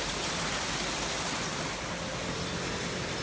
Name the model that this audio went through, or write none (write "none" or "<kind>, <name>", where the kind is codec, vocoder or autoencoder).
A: none